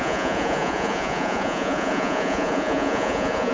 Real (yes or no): no